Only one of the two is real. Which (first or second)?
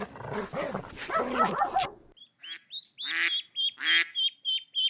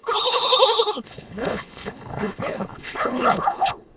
first